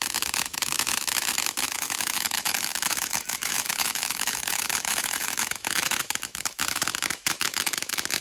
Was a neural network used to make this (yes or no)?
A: yes